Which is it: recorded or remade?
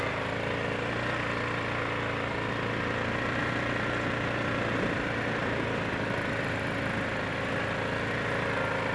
recorded